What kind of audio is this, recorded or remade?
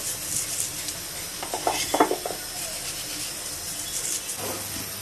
recorded